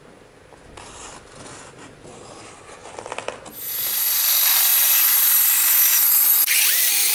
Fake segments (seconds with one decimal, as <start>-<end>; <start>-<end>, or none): 0.0-2.8; 4.2-4.7; 5.9-7.1